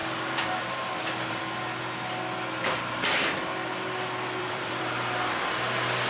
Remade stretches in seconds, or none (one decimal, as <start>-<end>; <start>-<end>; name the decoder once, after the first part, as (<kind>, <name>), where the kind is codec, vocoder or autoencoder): 0.0-1.4 (vocoder, BigVGAN v2); 4.4-5.4